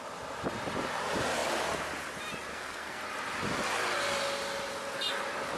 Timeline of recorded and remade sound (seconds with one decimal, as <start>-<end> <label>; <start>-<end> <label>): 0.0-2.5 recorded; 2.5-3.0 remade; 3.0-5.6 recorded